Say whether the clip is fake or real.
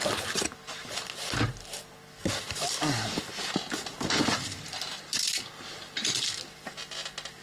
real